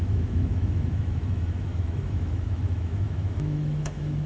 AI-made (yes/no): yes